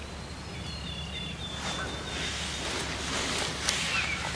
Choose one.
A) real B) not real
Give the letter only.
A